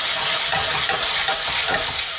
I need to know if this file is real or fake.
real